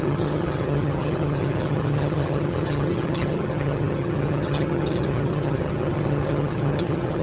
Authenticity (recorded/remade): remade